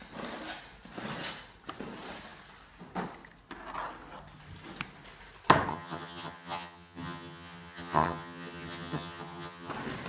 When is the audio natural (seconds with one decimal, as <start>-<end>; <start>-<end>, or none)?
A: 0.0-5.7; 9.7-10.1